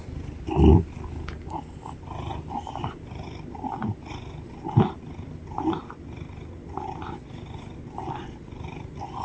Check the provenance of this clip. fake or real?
real